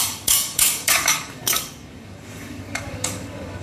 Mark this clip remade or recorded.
remade